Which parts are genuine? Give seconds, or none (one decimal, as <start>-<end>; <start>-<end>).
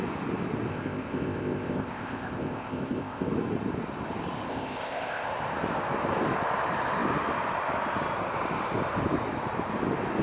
0.0-0.7; 3.3-4.5; 5.3-10.2